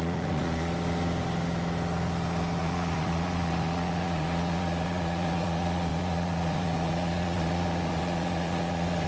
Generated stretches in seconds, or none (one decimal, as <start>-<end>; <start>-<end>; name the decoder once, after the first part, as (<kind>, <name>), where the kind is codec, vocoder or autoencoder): 0.0-0.7 (vocoder, Vocos); 2.6-9.1

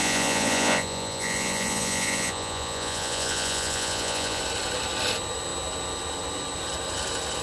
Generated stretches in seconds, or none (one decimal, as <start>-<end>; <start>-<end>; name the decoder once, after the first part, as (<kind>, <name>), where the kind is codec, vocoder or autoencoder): 0.0-4.4 (vocoder, Vocos)

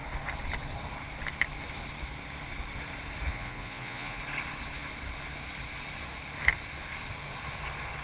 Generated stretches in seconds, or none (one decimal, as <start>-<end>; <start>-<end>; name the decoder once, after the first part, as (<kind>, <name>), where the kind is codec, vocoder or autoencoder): 3.3-4.2 (vocoder, Vocos)

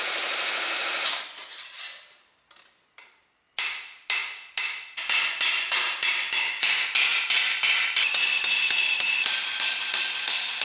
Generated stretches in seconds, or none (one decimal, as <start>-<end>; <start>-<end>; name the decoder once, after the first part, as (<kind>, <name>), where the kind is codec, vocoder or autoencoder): none

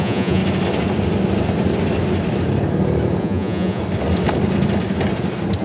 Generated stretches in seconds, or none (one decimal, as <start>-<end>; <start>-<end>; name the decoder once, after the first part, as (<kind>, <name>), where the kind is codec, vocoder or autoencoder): 0.0-0.4 (vocoder, Vocos); 3.2-3.8

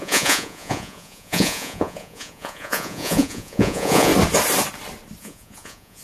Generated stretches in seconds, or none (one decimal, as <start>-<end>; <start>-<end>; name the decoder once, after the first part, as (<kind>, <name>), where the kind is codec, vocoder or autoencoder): 0.0-4.1 (vocoder, Vocos); 5.2-6.0

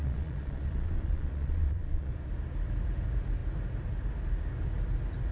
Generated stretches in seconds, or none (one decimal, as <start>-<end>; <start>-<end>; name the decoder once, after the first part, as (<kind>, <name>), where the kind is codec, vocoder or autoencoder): 0.0-2.1 (vocoder, Vocos)